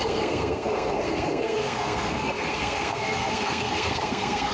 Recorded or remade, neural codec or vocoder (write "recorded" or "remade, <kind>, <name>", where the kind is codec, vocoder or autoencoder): remade, codec, SNAC